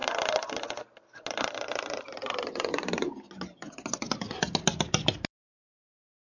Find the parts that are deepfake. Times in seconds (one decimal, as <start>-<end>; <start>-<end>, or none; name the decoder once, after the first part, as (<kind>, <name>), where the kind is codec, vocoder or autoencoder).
none